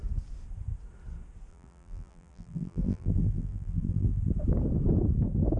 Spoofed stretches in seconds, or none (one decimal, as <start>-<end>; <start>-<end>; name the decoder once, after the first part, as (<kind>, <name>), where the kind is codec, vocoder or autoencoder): 1.5-4.2 (vocoder, BigVGAN v2)